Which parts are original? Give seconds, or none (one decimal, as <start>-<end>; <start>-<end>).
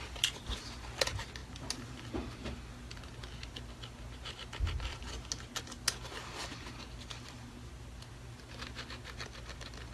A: 0.0-9.9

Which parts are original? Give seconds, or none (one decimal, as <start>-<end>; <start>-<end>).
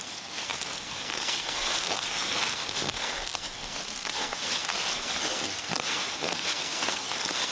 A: none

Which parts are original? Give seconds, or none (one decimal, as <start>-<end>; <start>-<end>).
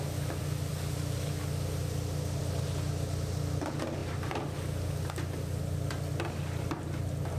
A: 0.0-7.4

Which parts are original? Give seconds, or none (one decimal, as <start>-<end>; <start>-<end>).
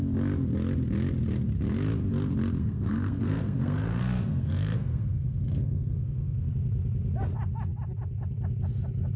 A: 0.0-2.6; 6.5-9.2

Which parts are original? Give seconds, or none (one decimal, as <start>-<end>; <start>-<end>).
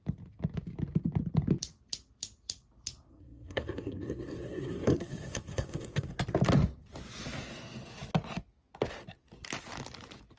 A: 0.0-3.1; 6.1-10.4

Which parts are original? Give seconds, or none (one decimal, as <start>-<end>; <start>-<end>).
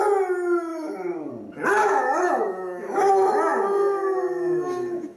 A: 0.0-0.7; 1.3-1.8; 3.1-3.5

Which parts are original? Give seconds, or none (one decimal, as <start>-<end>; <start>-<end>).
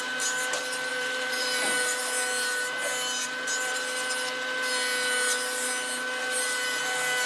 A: 0.0-0.9; 2.0-6.2; 6.8-7.3